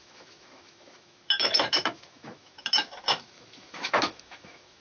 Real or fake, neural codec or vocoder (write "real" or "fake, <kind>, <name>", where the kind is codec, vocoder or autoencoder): fake, autoencoder, DAC-VAE